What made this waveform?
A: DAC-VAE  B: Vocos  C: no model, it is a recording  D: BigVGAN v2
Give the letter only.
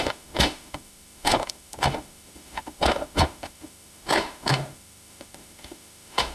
A